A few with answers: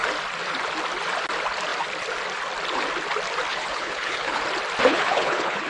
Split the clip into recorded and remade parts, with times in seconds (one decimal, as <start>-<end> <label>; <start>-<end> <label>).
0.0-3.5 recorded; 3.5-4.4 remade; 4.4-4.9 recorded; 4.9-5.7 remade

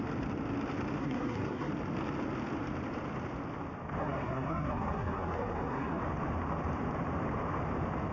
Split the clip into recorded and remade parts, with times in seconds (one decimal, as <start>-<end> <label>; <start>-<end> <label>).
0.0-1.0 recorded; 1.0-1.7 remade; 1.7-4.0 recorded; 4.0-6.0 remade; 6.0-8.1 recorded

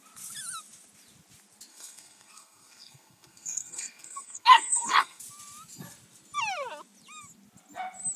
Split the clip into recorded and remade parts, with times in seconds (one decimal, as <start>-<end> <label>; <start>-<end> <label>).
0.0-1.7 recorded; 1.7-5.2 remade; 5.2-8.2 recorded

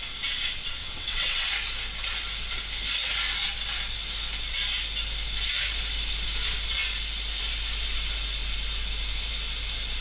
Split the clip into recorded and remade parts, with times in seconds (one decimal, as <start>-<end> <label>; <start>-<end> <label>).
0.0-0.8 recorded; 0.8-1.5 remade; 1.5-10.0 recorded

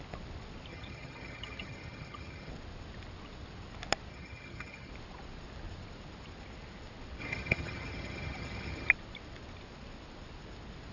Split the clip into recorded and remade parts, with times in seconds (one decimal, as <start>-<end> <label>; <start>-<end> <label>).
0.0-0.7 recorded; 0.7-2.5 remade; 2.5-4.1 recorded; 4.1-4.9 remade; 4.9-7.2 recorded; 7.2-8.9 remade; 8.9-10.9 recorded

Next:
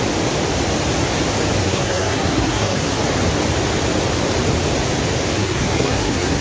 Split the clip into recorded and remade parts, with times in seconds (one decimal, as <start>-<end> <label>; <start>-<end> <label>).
0.0-1.6 recorded; 1.6-3.0 remade; 3.0-5.4 recorded; 5.4-6.4 remade